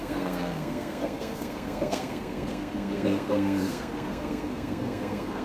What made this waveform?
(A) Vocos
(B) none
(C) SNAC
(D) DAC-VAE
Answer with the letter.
C